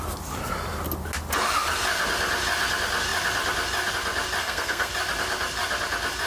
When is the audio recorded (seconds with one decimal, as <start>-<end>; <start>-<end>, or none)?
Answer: 0.0-4.4; 4.9-6.3